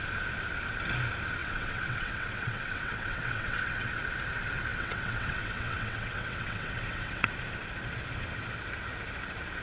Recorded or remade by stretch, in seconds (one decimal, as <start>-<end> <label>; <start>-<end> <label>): 0.0-1.4 recorded; 1.4-3.9 remade; 3.9-4.7 recorded; 4.7-7.3 remade; 7.3-9.6 recorded